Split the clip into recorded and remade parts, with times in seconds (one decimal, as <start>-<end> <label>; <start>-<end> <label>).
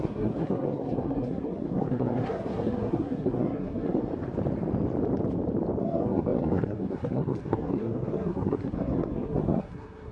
0.0-4.1 remade; 4.1-5.8 recorded; 5.8-10.1 remade